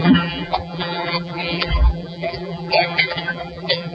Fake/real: fake